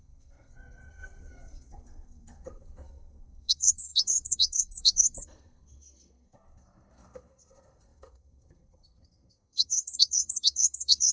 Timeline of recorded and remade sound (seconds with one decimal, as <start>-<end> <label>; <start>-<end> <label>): 0.0-11.1 remade